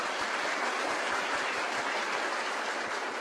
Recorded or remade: recorded